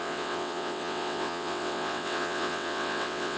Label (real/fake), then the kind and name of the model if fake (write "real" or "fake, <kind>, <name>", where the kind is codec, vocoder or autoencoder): fake, vocoder, WaveNeXt